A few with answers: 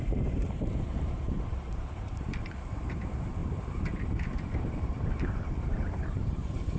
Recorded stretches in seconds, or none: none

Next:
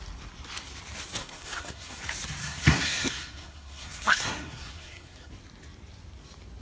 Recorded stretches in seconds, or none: 0.0-1.2; 2.0-2.4; 5.3-6.6

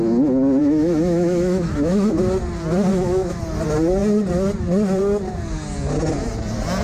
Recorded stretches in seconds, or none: 0.0-0.6; 2.2-2.9; 3.4-6.8

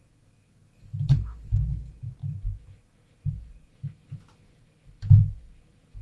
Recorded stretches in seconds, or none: 1.7-2.2